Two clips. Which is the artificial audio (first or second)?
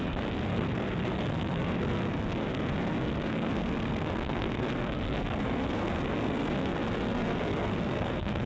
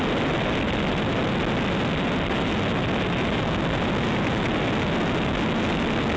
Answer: first